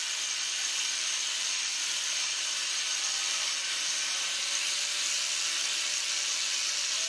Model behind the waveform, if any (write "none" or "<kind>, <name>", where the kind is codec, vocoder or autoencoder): none